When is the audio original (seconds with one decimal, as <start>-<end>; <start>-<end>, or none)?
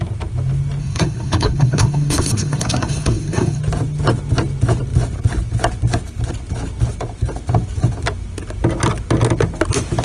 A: 0.0-0.8; 3.6-10.0